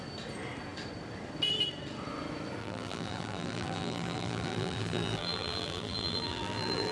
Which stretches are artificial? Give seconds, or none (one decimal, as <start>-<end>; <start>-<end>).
2.6-6.9